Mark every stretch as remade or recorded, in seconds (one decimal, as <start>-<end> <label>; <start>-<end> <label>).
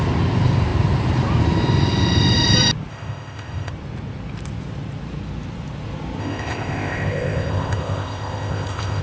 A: 0.0-2.9 recorded; 2.9-3.7 remade; 3.7-6.2 recorded; 6.2-9.0 remade